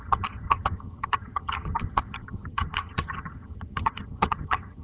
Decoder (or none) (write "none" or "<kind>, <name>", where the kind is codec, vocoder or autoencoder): vocoder, HiFi-GAN